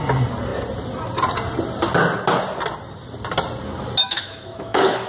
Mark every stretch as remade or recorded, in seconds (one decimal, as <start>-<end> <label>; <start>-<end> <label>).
0.0-4.0 recorded; 4.0-5.1 remade